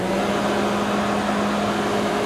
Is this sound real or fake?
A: real